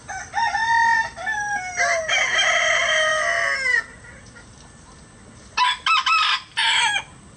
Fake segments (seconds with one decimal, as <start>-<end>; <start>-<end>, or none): 1.0-1.7; 3.1-4.6